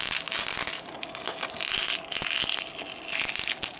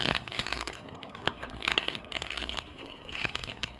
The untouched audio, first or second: first